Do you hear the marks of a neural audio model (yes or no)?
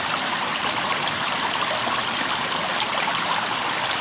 no